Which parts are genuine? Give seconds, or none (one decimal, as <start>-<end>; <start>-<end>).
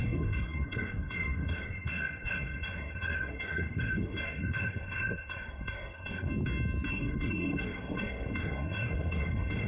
6.3-6.9